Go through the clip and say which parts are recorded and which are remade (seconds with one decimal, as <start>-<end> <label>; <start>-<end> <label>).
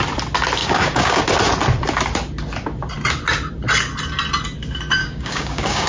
0.0-0.6 recorded; 0.6-1.2 remade; 1.2-5.0 recorded; 5.0-5.9 remade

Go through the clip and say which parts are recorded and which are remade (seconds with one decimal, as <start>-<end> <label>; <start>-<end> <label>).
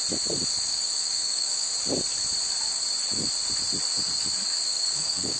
0.0-0.7 recorded; 0.7-1.7 remade; 1.7-4.7 recorded; 4.7-5.4 remade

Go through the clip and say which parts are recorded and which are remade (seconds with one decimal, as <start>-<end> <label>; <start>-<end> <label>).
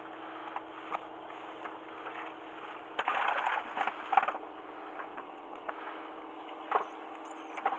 0.0-5.1 recorded; 5.1-5.7 remade; 5.7-7.8 recorded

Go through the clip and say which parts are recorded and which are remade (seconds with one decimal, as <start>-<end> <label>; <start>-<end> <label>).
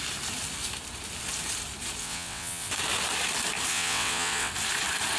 0.0-2.0 recorded; 2.0-2.7 remade; 2.7-3.7 recorded; 3.7-4.5 remade; 4.5-5.2 recorded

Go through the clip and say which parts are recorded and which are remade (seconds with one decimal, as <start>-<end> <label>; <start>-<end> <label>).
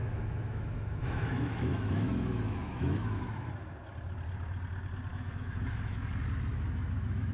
0.0-3.5 remade; 3.5-5.1 recorded; 5.1-6.1 remade; 6.1-6.5 recorded; 6.5-7.3 remade